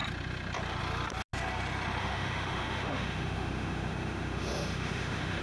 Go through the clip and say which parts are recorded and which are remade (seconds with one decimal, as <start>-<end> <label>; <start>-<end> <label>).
0.0-2.0 recorded; 2.0-5.4 remade